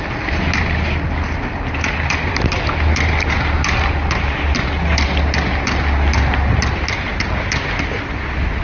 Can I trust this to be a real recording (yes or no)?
yes